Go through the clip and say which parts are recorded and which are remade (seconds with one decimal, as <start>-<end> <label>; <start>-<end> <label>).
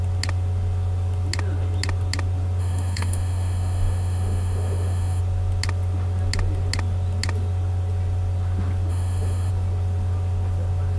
0.0-2.6 recorded; 2.6-5.2 remade; 5.2-8.9 recorded; 8.9-9.5 remade; 9.5-11.0 recorded